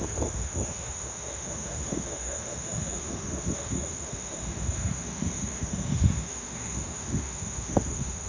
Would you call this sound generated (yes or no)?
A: yes